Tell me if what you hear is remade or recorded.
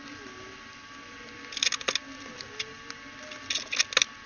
recorded